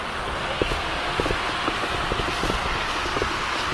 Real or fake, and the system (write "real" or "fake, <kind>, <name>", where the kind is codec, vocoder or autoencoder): real